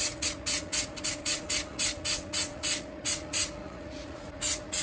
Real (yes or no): no